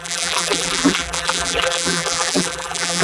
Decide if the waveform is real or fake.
fake